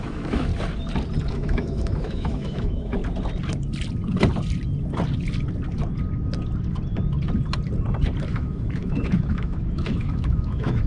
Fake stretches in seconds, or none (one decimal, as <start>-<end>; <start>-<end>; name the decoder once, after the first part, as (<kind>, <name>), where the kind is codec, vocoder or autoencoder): 0.0-0.5 (autoencoder, DAC-VAE); 1.3-3.0; 8.3-10.9